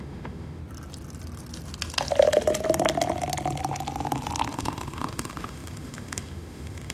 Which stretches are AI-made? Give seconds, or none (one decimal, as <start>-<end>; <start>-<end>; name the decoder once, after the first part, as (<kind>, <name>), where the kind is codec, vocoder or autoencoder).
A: 0.0-0.6 (autoencoder, DAC-VAE); 4.5-6.9